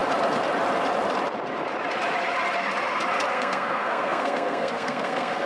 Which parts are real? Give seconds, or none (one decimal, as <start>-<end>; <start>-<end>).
0.0-3.3